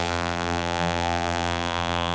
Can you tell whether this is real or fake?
fake